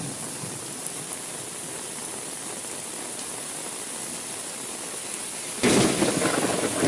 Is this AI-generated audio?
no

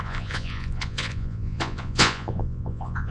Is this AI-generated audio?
yes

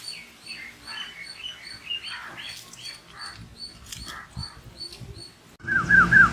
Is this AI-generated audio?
no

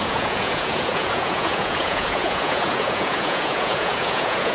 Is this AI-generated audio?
yes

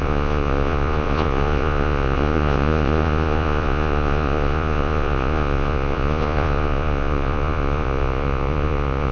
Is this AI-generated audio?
yes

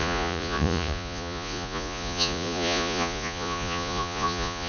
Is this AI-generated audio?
yes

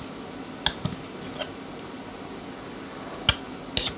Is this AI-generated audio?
no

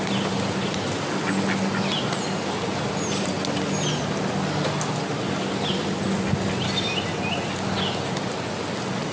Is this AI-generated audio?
no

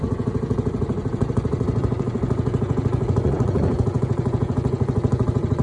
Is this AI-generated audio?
yes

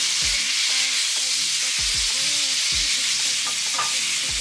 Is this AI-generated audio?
no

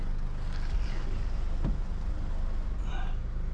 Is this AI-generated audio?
no